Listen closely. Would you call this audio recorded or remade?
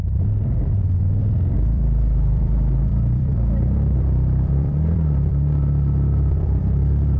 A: remade